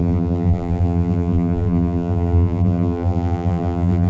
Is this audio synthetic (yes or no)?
yes